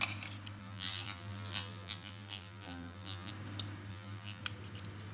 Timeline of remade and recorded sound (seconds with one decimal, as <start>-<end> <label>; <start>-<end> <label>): 0.0-0.6 recorded; 0.6-3.3 remade; 3.3-3.9 recorded; 3.9-4.4 remade; 4.4-5.1 recorded